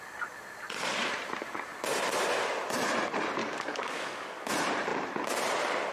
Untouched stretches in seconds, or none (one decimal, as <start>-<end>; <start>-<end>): 0.0-3.4; 4.5-5.9